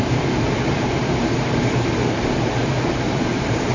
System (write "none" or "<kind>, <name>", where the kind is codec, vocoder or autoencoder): vocoder, BigVGAN v2